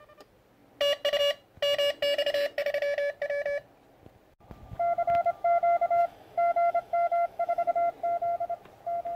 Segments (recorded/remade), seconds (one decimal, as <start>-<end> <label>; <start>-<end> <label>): 0.0-6.0 recorded; 6.0-7.7 remade; 7.7-9.2 recorded